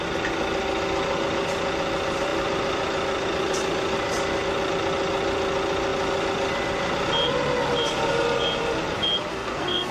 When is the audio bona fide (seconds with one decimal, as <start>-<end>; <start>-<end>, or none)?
0.0-9.3